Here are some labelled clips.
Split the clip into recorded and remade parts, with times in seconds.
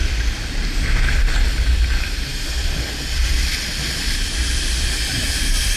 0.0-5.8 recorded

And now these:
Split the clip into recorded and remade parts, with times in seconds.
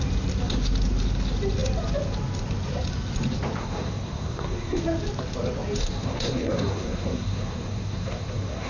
0.0-3.6 recorded; 3.6-4.8 remade; 4.8-5.8 recorded; 5.8-8.7 remade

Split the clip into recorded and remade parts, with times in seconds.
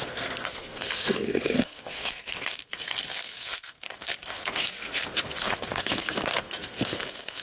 0.0-7.4 remade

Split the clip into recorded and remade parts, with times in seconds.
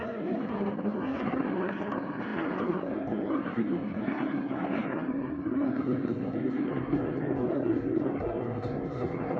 0.0-9.4 remade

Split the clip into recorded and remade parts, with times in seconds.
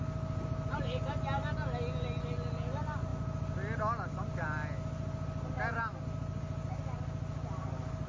0.0-8.1 recorded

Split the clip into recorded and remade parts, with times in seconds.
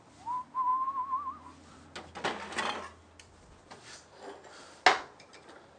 0.0-5.8 recorded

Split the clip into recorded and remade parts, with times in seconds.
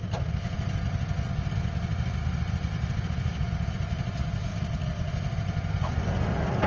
0.0-6.7 recorded